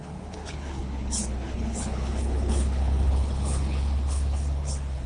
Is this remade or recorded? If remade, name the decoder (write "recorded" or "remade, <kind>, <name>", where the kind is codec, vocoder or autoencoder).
remade, codec, HILCodec